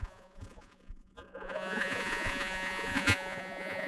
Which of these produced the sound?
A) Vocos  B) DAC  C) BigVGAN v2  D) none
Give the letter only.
A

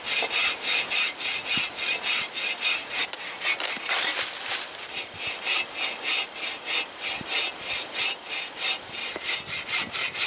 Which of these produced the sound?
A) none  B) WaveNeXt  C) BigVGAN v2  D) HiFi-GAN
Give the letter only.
A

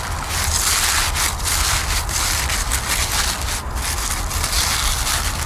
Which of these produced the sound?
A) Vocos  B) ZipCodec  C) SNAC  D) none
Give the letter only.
D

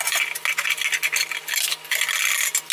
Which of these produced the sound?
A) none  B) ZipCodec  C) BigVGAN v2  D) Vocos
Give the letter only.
A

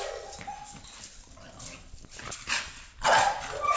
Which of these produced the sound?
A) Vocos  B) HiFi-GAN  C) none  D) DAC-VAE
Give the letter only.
C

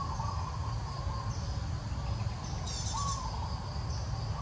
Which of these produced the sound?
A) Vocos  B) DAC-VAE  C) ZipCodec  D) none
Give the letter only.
D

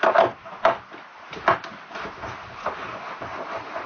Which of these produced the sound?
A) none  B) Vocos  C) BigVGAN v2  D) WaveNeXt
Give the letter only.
A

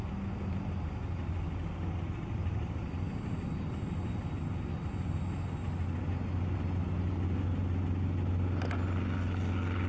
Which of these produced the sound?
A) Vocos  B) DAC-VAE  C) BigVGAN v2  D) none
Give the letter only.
D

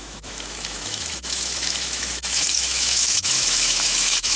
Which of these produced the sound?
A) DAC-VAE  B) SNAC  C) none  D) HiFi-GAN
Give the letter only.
A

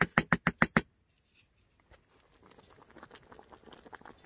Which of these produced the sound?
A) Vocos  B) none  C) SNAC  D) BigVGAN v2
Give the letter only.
B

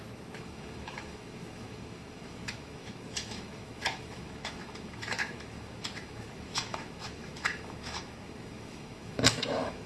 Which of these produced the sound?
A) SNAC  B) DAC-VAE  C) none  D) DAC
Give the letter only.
B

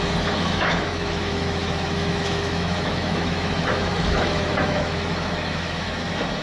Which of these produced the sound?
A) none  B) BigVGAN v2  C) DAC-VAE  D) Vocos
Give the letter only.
C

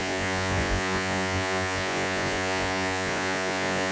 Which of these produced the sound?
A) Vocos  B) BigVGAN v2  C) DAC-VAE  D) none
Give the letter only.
A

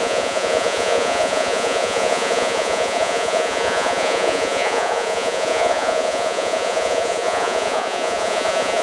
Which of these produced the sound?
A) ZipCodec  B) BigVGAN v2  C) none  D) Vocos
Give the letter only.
D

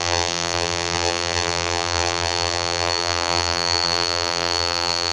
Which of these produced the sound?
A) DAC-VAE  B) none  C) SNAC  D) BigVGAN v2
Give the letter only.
D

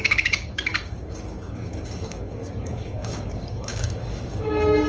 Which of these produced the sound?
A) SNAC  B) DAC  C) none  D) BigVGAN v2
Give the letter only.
B